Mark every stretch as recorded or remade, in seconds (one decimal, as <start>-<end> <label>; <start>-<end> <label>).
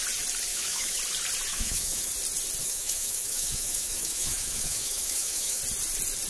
0.0-0.5 recorded; 0.5-1.0 remade; 1.0-1.5 recorded; 1.5-2.1 remade; 2.1-2.6 recorded; 2.6-5.6 remade; 5.6-6.3 recorded